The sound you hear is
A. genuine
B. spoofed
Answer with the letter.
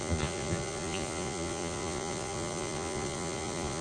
B